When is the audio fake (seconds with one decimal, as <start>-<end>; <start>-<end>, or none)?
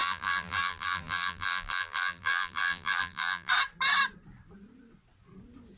0.0-3.5